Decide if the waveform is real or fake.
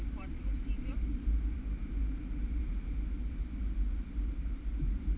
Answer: fake